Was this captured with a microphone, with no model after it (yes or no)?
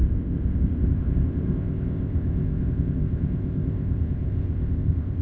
no